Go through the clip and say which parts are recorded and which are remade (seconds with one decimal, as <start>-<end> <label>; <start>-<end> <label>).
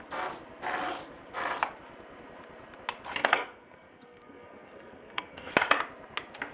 0.0-3.2 recorded; 3.2-5.5 remade; 5.5-6.5 recorded